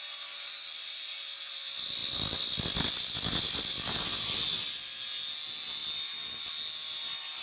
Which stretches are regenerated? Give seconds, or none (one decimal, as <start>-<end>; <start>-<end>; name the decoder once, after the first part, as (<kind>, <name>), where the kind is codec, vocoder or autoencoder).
2.0-3.9 (vocoder, BigVGAN v2)